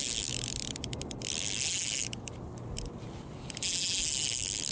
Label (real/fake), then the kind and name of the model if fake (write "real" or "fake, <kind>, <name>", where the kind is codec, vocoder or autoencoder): real